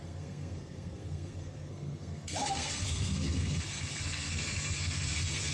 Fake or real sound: fake